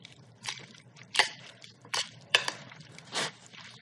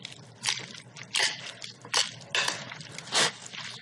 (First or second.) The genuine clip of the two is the second